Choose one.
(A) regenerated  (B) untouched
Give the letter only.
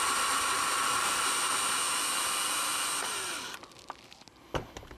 B